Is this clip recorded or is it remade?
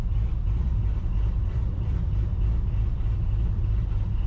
remade